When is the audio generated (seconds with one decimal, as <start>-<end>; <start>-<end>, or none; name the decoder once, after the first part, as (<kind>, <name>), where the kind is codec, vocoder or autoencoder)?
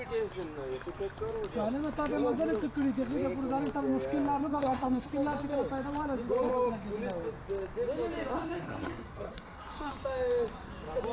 4.5-5.1 (codec, SNAC); 8.3-9.9